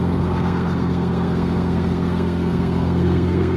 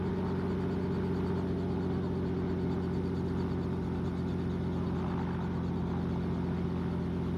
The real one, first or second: second